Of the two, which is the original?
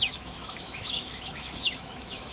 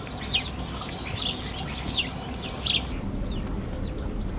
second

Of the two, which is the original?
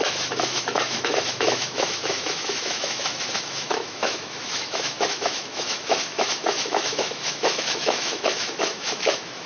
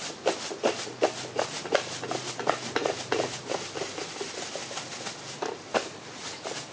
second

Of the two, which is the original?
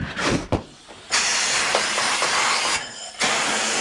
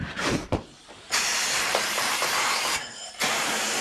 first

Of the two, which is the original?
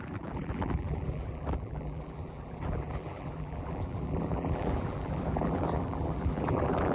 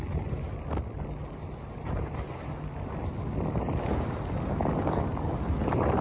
second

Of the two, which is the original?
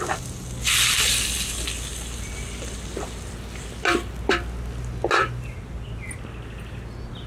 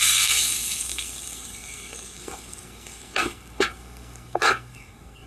first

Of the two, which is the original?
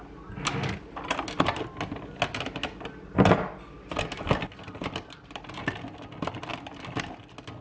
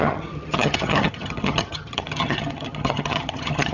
first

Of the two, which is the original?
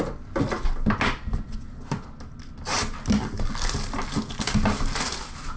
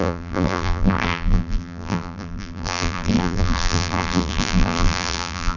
first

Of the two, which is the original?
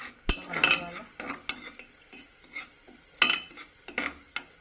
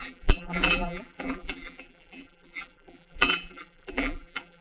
first